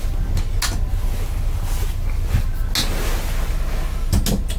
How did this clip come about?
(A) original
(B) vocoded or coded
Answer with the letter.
A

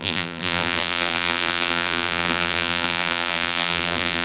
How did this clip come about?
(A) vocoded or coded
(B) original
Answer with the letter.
A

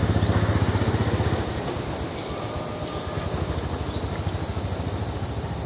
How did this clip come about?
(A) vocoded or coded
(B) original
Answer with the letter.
B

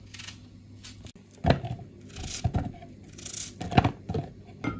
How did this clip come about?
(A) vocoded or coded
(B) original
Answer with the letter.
B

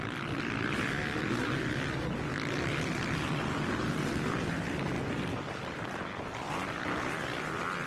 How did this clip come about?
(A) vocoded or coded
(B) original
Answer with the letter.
B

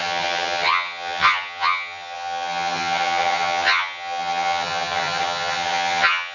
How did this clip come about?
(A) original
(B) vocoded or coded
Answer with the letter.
B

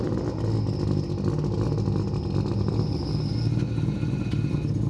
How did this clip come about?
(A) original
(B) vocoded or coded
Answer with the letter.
A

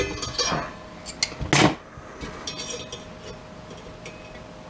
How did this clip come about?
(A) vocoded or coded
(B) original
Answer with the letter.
B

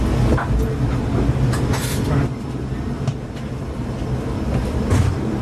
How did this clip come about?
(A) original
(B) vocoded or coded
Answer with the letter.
A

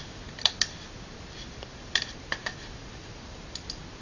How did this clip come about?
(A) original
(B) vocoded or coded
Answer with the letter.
B